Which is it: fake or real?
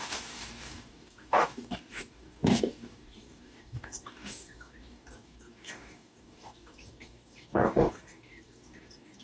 fake